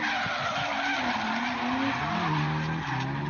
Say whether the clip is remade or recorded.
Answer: recorded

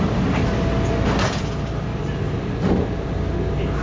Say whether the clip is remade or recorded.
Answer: recorded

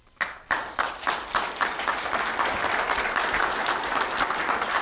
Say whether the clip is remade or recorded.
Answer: recorded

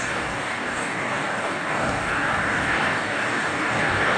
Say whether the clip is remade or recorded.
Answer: remade